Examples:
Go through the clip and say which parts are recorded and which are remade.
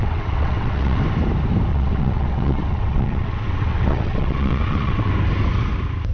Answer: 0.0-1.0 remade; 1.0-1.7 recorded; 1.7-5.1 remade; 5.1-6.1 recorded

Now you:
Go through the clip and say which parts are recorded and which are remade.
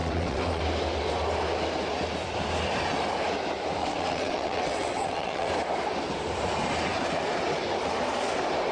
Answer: 0.0-0.6 remade; 0.6-3.8 recorded; 3.8-5.5 remade; 5.5-8.7 recorded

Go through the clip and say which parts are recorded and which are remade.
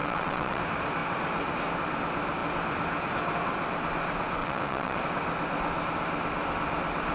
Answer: 0.0-0.6 remade; 0.6-4.4 recorded; 4.4-5.0 remade; 5.0-7.1 recorded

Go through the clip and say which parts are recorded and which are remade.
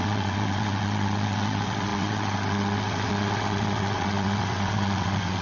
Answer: 0.0-5.4 remade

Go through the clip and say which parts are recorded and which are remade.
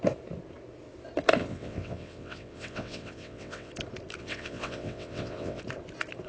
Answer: 0.0-1.4 recorded; 1.4-3.7 remade; 3.7-4.2 recorded; 4.2-5.6 remade; 5.6-6.3 recorded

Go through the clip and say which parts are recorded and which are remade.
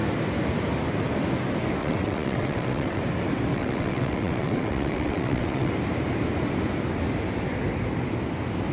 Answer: 0.0-1.8 recorded; 1.8-3.0 remade; 3.0-3.5 recorded; 3.5-5.7 remade; 5.7-8.7 recorded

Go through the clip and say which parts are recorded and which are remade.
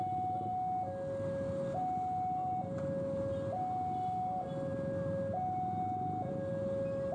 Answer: 0.0-7.1 recorded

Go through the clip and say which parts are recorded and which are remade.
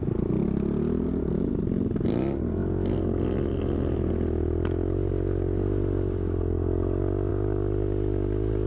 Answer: 0.0-8.7 recorded